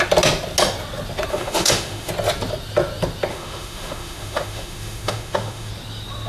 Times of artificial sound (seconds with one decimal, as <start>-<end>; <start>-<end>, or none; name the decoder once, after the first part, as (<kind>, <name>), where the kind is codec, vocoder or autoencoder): 1.3-2.1 (autoencoder, DAC-VAE); 3.3-5.7